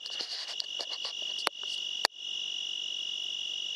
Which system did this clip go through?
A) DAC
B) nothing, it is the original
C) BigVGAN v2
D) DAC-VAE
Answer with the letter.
B